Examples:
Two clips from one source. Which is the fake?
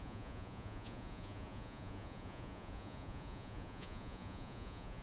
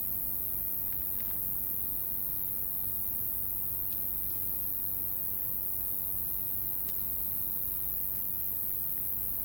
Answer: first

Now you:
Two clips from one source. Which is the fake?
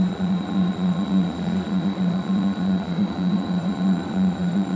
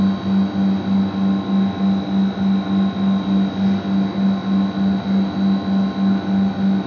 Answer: first